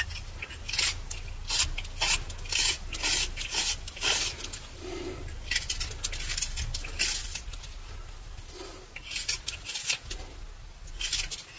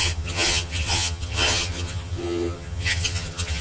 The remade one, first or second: second